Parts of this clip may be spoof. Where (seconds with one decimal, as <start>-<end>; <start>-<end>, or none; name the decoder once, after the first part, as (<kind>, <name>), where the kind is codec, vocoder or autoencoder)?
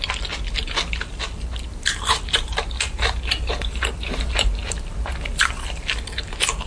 1.7-5.4 (vocoder, BigVGAN v2)